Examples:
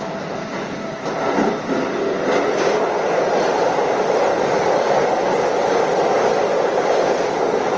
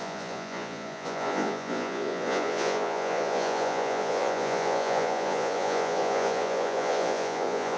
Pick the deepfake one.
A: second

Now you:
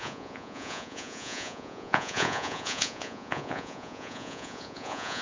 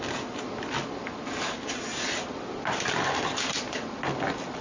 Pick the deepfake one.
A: first